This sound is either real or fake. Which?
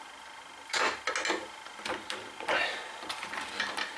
real